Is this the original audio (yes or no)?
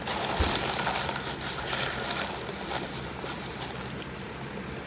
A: yes